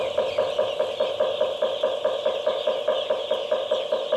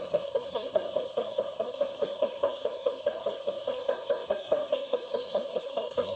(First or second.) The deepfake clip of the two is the second